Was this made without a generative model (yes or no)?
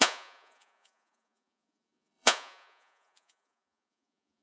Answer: no